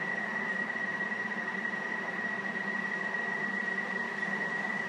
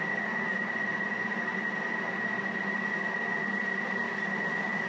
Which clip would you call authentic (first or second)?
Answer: second